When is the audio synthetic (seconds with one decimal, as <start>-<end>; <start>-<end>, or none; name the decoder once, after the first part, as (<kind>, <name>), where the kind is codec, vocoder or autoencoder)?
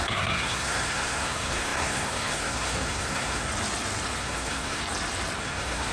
0.0-3.5 (codec, SNAC); 4.2-4.8; 5.4-5.9